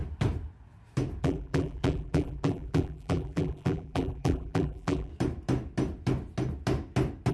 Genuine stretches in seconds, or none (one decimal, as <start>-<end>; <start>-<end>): 0.0-1.2; 5.1-7.3